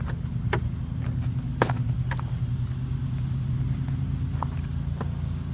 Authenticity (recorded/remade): recorded